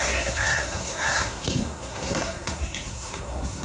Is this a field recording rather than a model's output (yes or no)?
no